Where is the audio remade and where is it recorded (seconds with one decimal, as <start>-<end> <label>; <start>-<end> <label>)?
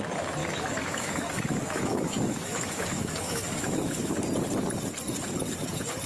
0.0-0.4 recorded; 0.4-4.1 remade; 4.1-6.1 recorded